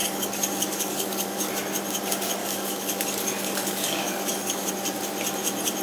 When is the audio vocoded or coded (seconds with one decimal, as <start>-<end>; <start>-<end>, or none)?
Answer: 0.0-1.5; 2.4-4.7